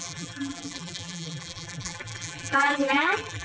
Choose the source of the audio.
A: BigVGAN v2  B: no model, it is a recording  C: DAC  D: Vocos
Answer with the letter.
A